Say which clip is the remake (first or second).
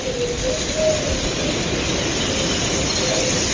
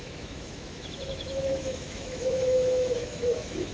second